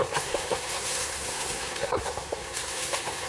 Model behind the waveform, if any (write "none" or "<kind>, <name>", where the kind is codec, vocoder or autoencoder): codec, SNAC